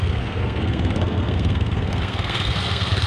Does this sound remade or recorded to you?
remade